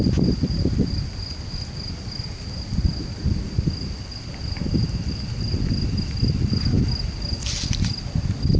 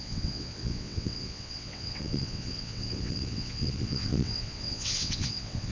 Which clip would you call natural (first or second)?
first